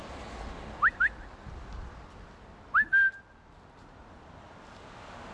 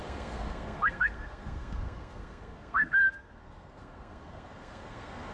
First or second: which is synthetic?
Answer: second